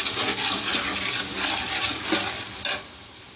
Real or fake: real